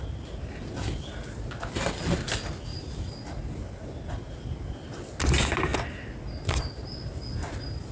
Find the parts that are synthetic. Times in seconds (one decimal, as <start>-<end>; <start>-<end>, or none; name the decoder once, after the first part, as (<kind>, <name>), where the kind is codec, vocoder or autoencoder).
none